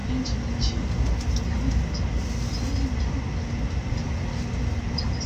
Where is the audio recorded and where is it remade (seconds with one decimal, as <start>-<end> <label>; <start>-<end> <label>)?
0.0-5.3 recorded